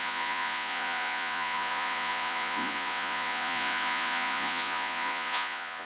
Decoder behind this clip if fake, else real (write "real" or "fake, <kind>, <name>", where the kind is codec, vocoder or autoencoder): fake, vocoder, Vocos